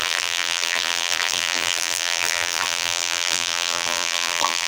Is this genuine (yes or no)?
no